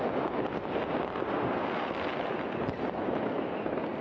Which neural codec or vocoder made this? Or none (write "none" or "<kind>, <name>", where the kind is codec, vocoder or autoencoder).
none